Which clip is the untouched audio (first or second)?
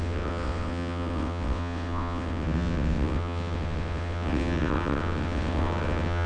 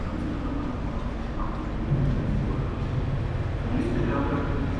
second